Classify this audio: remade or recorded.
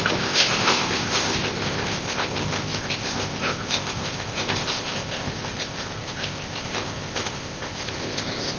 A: remade